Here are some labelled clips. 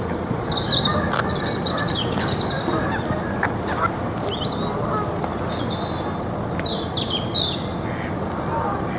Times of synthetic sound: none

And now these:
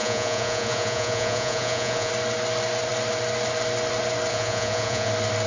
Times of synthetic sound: 0.0-2.1 (vocoder, Vocos); 4.3-5.1

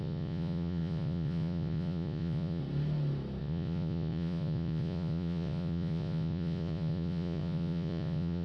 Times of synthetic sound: 0.0-2.6 (vocoder, Vocos); 3.4-8.4

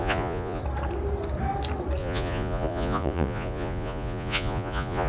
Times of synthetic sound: 0.0-0.6 (vocoder, Vocos); 2.0-5.1

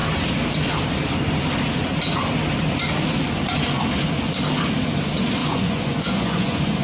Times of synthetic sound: 5.4-6.8 (vocoder, Vocos)

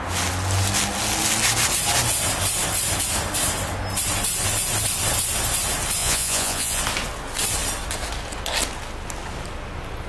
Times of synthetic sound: 6.0-6.8 (vocoder, Vocos)

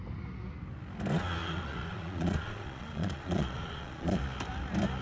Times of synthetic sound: 1.4-4.2 (vocoder, Vocos)

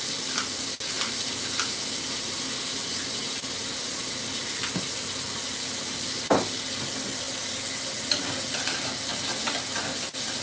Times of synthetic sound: none